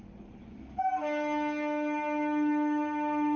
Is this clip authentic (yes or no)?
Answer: yes